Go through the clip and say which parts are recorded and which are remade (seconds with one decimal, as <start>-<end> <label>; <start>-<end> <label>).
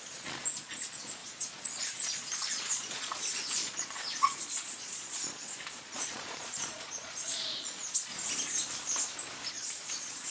0.0-8.1 remade; 8.1-9.5 recorded; 9.5-10.3 remade